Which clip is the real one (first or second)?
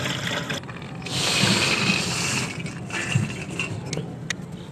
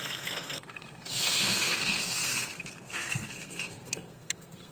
first